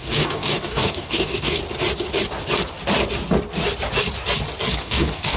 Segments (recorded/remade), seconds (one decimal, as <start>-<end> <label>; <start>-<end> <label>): 0.0-1.6 remade; 1.6-4.8 recorded; 4.8-5.4 remade